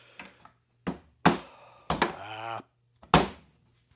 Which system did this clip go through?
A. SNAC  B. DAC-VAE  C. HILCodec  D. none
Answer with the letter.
D